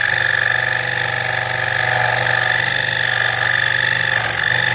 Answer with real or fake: real